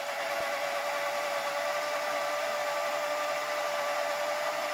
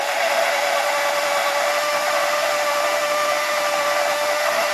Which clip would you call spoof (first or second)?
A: second